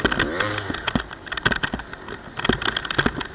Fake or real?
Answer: real